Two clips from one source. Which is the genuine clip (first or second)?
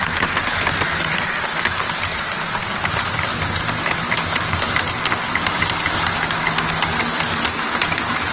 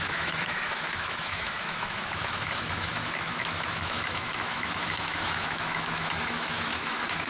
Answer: first